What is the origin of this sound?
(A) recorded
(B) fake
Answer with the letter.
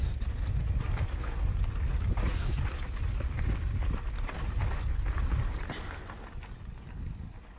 A